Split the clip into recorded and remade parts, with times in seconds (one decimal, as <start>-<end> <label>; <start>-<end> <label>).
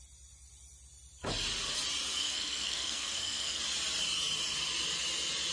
0.0-2.2 recorded; 2.2-3.6 remade; 3.6-5.5 recorded